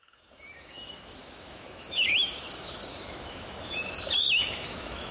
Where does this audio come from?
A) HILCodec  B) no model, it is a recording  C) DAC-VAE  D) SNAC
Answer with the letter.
C